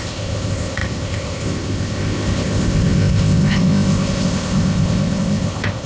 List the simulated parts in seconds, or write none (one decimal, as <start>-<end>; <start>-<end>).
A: 0.0-5.9